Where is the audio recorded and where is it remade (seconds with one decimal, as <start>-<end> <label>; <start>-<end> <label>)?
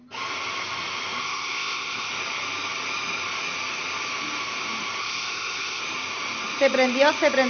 0.0-1.2 recorded; 1.2-2.1 remade; 2.1-5.0 recorded; 5.0-5.8 remade; 5.8-7.5 recorded